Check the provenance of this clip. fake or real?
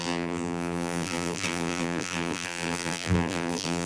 fake